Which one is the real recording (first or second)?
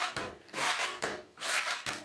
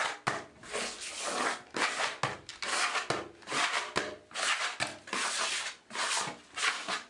second